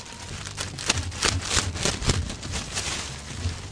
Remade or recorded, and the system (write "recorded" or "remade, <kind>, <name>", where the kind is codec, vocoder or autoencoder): recorded